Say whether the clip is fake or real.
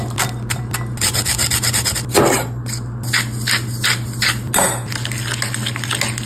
real